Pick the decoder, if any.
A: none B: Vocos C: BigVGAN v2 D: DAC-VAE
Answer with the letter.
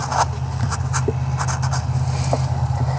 A